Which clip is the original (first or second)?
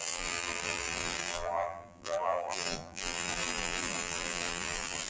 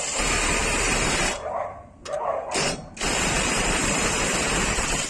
second